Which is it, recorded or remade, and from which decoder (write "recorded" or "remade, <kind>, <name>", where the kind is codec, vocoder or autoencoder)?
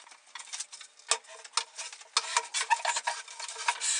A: recorded